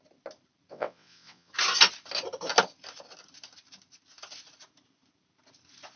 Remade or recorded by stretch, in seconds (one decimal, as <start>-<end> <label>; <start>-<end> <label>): 0.0-0.7 recorded; 0.7-1.5 remade; 1.5-6.0 recorded